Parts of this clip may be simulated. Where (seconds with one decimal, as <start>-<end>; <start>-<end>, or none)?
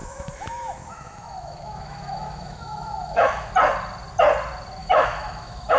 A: 0.0-3.5; 4.8-5.8